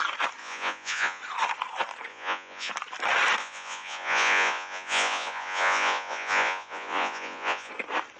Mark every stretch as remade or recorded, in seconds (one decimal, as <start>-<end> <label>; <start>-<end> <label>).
0.0-0.4 recorded; 0.4-1.2 remade; 1.2-2.1 recorded; 2.1-2.7 remade; 2.7-3.4 recorded; 3.4-7.7 remade; 7.7-8.2 recorded